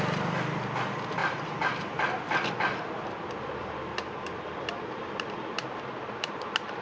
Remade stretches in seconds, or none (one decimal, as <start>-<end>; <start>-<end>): none